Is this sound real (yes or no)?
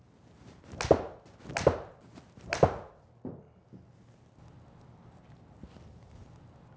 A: yes